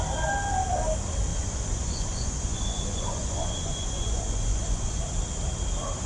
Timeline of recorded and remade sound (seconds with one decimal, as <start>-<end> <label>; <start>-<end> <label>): 0.0-1.3 recorded; 1.3-5.0 remade; 5.0-6.1 recorded